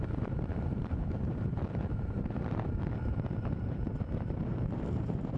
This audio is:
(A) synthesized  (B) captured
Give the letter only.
A